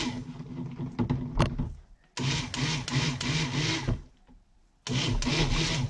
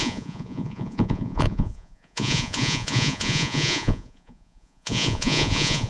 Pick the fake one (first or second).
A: second